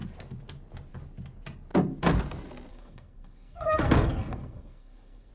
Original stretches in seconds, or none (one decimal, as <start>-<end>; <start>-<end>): 0.0-2.7